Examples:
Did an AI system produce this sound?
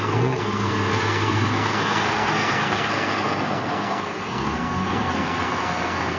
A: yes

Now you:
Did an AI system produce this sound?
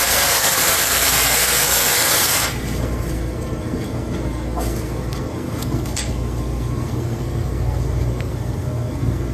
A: yes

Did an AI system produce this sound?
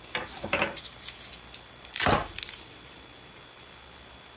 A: no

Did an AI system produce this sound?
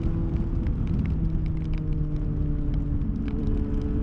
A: no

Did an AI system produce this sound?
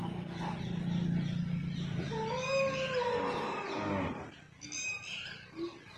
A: no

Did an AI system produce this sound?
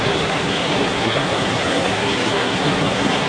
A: yes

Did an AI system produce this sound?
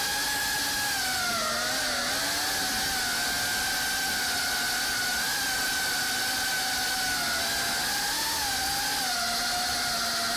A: no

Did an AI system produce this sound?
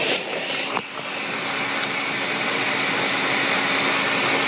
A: no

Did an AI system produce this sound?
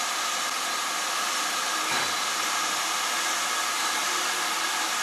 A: no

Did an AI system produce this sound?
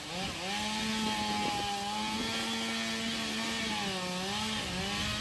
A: no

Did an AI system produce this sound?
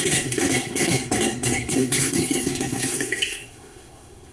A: yes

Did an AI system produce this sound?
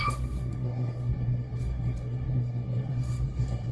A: yes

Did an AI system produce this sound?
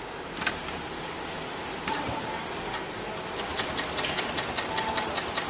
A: no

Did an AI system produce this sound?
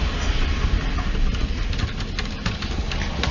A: no